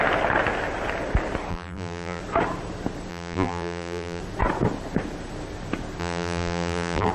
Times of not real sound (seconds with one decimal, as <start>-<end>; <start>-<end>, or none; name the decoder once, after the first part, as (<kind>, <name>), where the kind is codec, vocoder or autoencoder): 1.5-2.2 (vocoder, BigVGAN v2); 3.1-4.2; 6.0-7.1